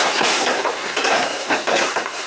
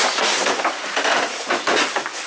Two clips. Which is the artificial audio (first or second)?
first